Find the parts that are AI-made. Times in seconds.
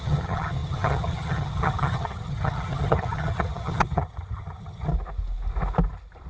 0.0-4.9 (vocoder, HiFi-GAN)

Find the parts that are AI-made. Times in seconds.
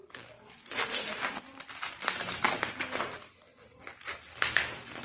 none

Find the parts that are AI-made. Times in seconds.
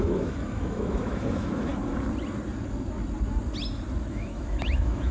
0.0-1.7 (autoencoder, DAC-VAE); 4.1-5.1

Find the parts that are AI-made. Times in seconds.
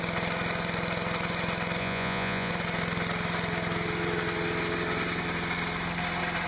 1.8-2.5 (vocoder, Vocos)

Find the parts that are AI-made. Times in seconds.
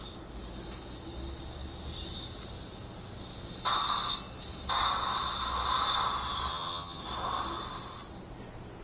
6.5-7.0 (vocoder, HiFi-GAN)